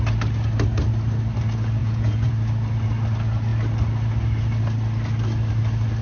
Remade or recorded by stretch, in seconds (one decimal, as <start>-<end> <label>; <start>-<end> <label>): 0.0-1.8 recorded; 1.8-2.3 remade; 2.3-6.0 recorded